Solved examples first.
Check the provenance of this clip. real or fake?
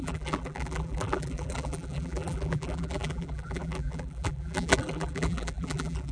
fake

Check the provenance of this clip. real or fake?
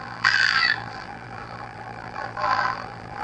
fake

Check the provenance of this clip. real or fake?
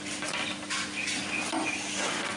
real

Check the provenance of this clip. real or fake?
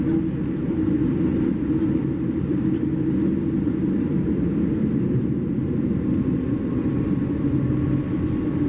fake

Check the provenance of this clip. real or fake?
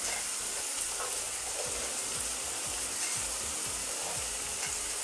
fake